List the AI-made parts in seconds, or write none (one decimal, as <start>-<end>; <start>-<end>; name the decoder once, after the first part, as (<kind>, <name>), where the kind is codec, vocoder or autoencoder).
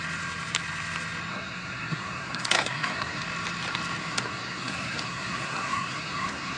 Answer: 1.3-3.2 (codec, SNAC); 4.0-6.6